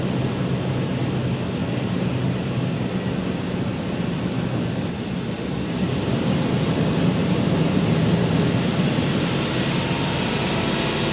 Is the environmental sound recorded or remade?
recorded